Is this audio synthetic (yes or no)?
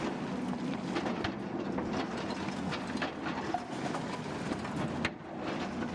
no